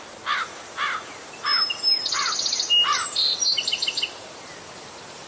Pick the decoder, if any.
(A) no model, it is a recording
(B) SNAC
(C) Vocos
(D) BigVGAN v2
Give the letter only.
A